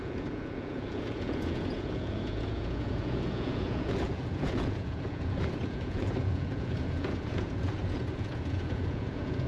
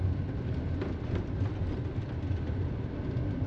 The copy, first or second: first